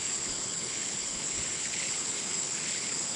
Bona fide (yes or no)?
no